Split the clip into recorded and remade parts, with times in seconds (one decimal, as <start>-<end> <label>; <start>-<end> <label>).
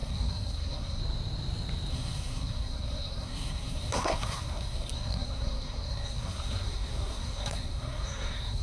0.0-1.0 remade; 1.0-1.9 recorded; 1.9-8.6 remade